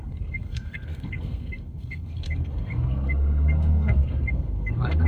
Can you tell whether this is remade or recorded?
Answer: remade